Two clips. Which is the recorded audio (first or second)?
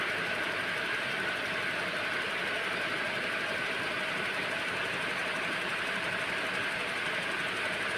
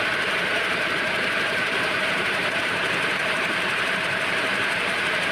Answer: first